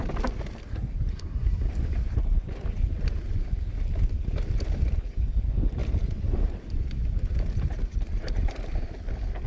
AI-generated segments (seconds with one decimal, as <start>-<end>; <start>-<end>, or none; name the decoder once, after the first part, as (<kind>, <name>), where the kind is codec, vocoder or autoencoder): 1.1-1.7 (codec, SNAC)